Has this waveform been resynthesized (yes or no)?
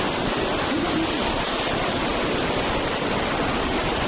no